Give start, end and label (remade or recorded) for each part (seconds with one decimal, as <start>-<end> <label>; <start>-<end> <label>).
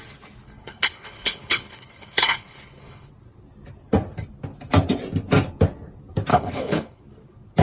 0.0-0.6 recorded; 0.6-3.1 remade; 3.1-6.3 recorded; 6.3-7.0 remade; 7.0-7.6 recorded